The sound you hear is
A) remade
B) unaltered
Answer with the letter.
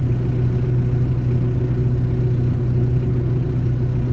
B